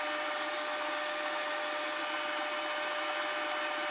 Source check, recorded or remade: recorded